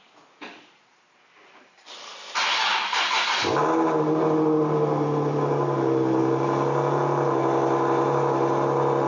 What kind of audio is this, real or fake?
real